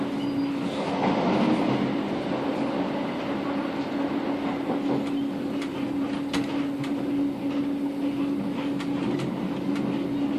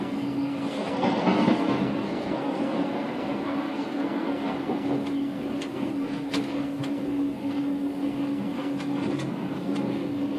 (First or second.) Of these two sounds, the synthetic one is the second